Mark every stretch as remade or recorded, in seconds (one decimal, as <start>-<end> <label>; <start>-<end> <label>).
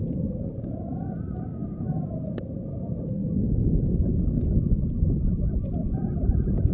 0.0-1.5 remade; 1.5-2.4 recorded; 2.4-3.2 remade; 3.2-5.9 recorded; 5.9-6.7 remade